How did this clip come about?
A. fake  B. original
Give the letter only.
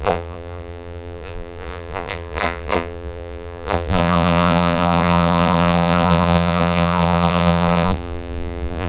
A